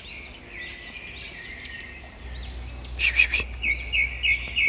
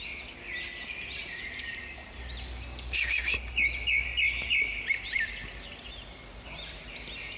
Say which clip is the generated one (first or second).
second